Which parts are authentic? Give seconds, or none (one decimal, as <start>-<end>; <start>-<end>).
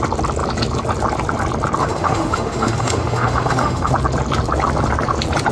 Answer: 0.0-1.8; 3.9-5.5